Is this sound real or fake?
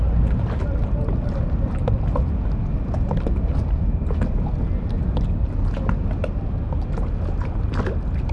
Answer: real